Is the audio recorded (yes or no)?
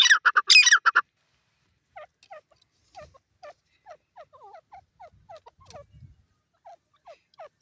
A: yes